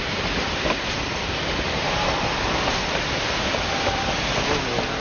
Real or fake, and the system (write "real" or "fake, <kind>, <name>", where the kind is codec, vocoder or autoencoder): real